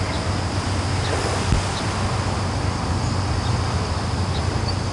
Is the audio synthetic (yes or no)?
no